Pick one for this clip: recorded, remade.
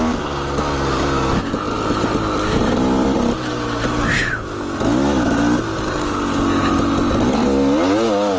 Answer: recorded